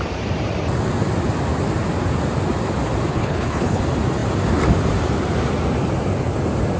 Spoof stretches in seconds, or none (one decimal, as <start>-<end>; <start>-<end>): 3.1-3.8